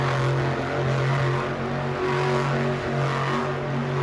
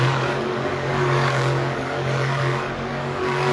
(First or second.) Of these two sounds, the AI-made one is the second